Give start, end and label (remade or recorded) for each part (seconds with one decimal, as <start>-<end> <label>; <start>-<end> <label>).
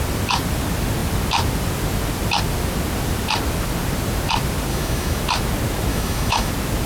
0.0-4.7 recorded; 4.7-5.2 remade; 5.2-5.9 recorded; 5.9-6.5 remade; 6.5-6.9 recorded